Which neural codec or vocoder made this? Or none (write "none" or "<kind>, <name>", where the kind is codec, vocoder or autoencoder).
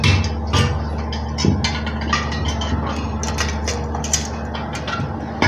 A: none